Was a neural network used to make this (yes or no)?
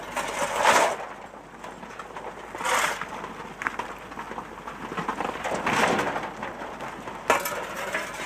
no